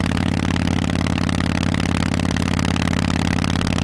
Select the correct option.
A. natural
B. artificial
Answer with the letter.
A